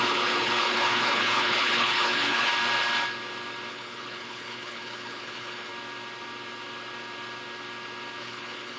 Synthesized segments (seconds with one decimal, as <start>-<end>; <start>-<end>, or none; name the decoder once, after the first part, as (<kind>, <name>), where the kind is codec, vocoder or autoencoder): 0.0-2.5 (codec, HILCodec); 3.7-5.7; 8.2-8.8